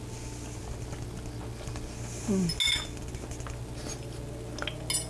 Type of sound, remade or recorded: recorded